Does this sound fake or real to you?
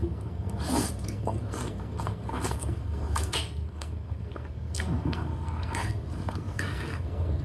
fake